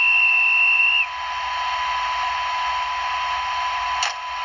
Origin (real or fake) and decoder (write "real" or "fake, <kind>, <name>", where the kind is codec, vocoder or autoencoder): real